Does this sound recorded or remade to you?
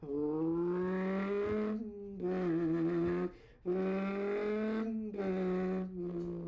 recorded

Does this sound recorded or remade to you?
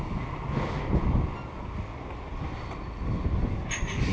recorded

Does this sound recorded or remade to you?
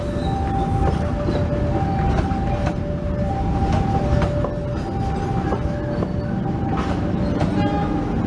recorded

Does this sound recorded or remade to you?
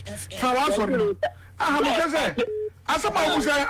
remade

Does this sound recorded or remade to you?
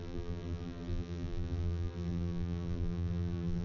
remade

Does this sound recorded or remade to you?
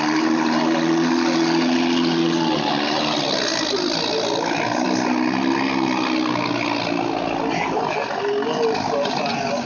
recorded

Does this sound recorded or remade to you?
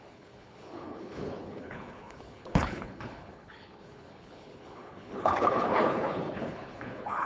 remade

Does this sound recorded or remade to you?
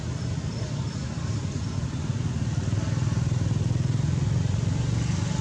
recorded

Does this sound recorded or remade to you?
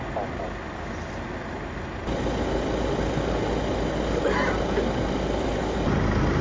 recorded